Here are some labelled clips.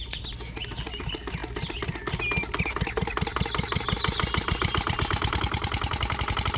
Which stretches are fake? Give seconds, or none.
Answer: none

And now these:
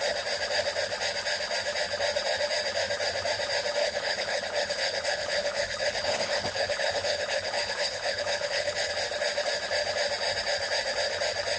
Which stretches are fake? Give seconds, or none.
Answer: 3.8-8.9